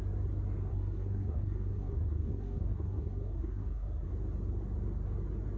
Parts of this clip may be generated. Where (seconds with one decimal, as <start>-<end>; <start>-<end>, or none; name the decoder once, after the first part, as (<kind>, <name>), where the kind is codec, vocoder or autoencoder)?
0.7-4.1 (codec, SNAC)